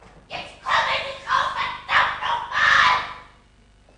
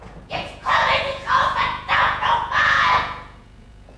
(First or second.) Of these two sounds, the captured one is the first